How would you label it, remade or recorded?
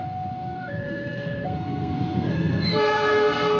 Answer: remade